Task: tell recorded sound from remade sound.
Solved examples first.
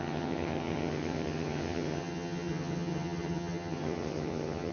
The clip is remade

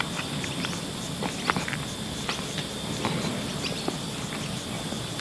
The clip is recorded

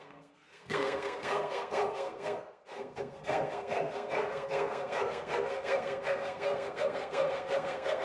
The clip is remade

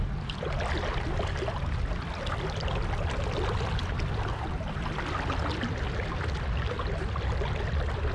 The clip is recorded